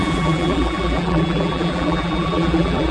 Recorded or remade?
remade